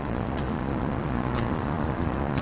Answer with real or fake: fake